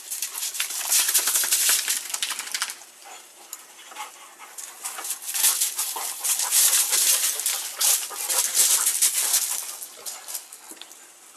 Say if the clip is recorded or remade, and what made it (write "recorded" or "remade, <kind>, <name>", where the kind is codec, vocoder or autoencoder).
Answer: recorded